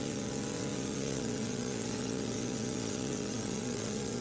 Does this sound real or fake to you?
fake